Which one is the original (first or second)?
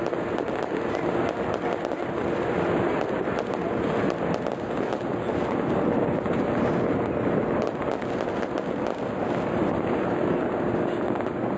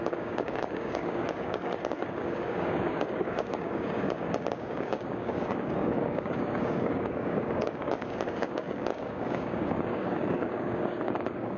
first